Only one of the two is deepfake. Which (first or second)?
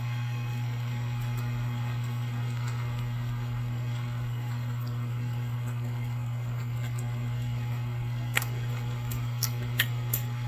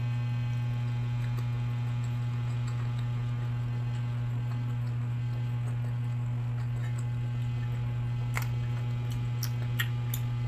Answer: first